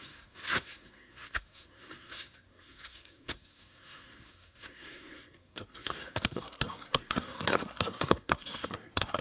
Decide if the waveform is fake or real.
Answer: fake